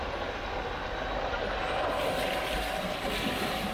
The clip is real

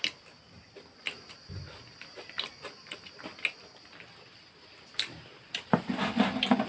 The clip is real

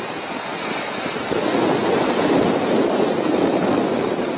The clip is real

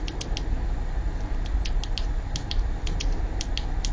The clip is real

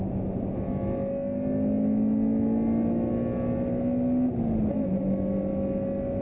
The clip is real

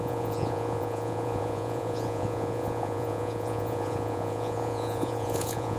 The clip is fake